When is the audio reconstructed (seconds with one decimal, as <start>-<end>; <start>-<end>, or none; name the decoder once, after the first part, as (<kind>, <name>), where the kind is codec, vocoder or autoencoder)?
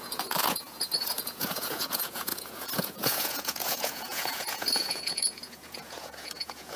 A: 0.0-6.8 (vocoder, Vocos)